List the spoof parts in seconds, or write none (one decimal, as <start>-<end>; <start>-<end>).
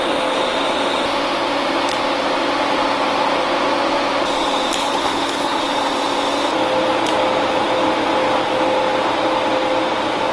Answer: 4.8-5.6